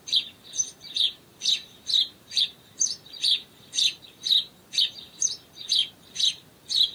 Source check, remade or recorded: remade